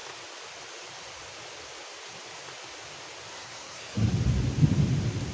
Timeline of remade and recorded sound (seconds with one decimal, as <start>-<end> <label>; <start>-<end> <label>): 0.0-3.3 recorded; 3.3-4.1 remade; 4.1-5.3 recorded